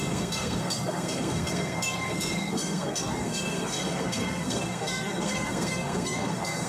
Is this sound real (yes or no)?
no